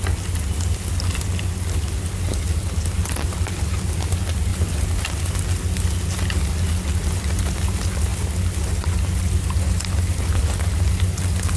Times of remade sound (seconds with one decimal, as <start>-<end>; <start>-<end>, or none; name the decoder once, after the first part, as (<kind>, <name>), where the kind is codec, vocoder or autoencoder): none